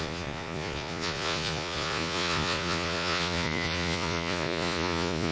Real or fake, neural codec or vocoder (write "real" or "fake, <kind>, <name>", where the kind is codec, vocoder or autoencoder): fake, vocoder, Vocos